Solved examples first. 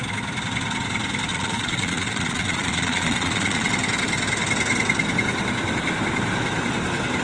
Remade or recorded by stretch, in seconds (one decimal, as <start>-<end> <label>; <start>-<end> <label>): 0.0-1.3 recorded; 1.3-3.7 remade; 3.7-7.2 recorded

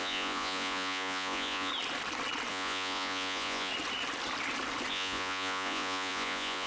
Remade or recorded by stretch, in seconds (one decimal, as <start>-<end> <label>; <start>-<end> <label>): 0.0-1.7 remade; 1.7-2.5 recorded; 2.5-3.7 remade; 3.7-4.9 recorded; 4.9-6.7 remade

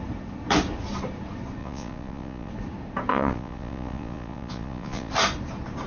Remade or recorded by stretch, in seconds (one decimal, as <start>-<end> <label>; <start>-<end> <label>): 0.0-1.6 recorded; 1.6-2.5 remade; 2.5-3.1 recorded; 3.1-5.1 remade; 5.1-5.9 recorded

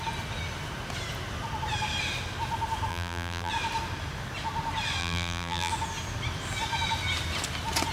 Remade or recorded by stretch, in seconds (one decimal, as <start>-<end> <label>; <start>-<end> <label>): 0.0-2.9 recorded; 2.9-3.5 remade; 3.5-5.0 recorded; 5.0-5.7 remade; 5.7-7.9 recorded

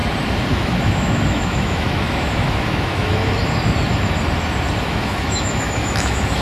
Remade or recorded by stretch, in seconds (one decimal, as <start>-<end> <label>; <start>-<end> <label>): 0.0-0.5 recorded; 0.5-3.4 remade; 3.4-4.8 recorded; 4.8-6.4 remade

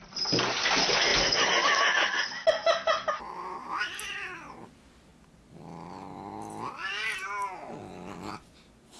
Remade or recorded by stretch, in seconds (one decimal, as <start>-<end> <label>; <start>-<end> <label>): 0.0-9.0 recorded